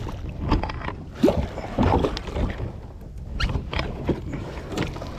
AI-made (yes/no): no